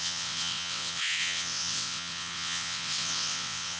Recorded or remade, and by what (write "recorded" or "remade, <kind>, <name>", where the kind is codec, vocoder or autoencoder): remade, vocoder, WaveNeXt